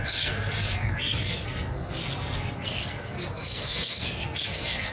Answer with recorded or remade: remade